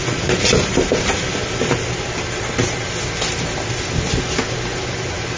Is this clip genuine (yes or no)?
yes